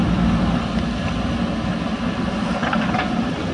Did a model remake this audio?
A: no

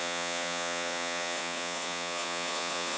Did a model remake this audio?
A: yes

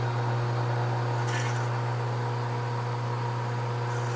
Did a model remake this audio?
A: no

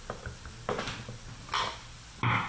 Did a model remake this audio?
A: no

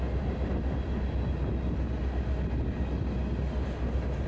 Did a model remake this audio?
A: no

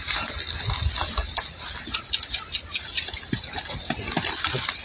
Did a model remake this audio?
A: no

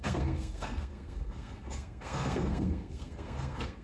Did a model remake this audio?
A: yes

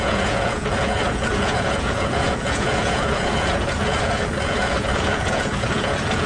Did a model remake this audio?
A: yes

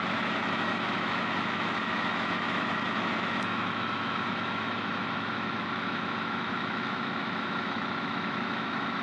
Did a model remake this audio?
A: yes